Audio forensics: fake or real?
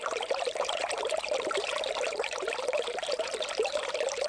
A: fake